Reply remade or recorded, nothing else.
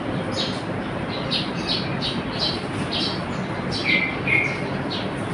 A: recorded